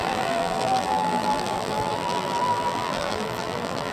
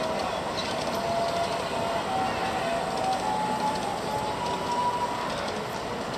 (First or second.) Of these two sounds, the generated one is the first